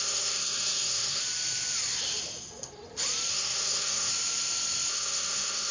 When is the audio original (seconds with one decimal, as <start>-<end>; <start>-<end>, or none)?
1.2-3.3; 4.1-4.9